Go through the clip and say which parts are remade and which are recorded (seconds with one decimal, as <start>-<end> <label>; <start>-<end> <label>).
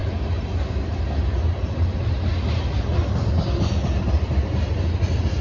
0.0-5.4 recorded